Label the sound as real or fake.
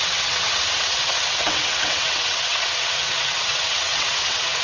fake